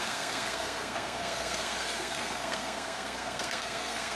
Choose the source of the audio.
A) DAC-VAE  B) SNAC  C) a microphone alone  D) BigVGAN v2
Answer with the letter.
B